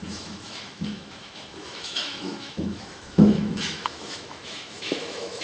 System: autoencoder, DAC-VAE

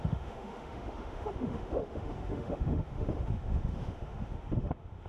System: autoencoder, DAC-VAE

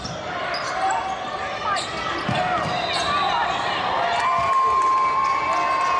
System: none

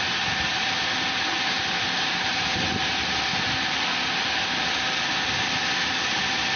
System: none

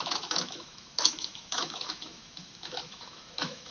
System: autoencoder, DAC-VAE